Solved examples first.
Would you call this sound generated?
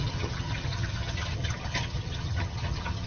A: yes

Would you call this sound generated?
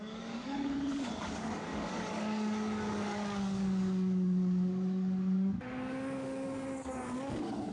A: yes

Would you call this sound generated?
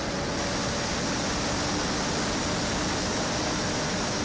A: no